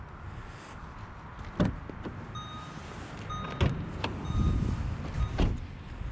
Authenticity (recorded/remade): recorded